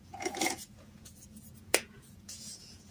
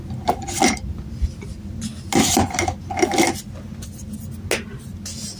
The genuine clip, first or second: second